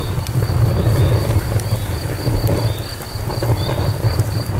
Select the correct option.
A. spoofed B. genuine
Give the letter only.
B